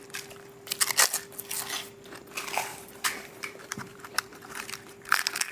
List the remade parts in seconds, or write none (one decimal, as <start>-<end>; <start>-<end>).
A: 2.7-4.9